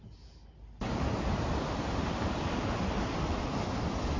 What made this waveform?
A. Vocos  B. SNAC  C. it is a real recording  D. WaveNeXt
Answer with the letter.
C